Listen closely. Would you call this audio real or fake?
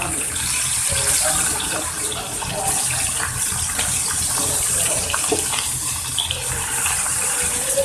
fake